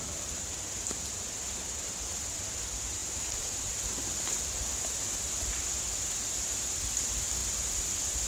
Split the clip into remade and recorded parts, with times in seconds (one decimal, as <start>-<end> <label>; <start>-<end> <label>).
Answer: 0.0-3.0 recorded; 3.0-3.7 remade; 3.7-8.3 recorded